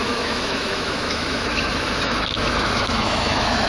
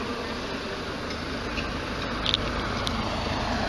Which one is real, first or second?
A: second